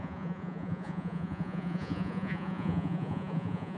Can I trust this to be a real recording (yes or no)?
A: no